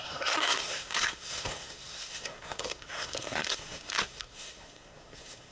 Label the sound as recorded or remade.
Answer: remade